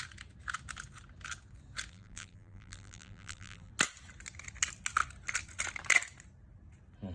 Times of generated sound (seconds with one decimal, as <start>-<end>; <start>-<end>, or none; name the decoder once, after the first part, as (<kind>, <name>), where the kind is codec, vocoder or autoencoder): 1.9-3.7 (vocoder, BigVGAN v2)